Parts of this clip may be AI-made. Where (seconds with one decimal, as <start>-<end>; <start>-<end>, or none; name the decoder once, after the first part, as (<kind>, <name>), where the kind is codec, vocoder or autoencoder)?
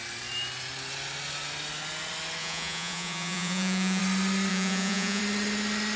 2.4-4.0 (vocoder, Vocos); 4.5-5.2